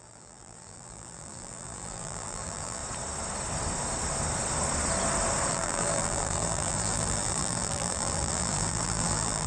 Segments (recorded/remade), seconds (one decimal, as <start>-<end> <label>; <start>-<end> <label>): 0.0-2.8 remade; 2.8-5.5 recorded; 5.5-9.5 remade